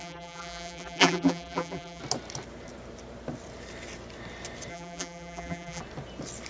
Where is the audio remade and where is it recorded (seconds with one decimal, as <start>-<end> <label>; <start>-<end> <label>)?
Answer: 0.0-2.0 remade; 2.0-4.7 recorded; 4.7-5.8 remade; 5.8-6.5 recorded